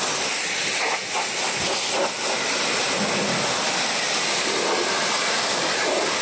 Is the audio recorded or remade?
recorded